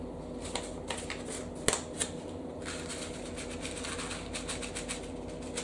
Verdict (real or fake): real